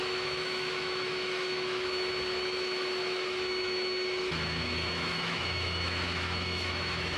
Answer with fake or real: fake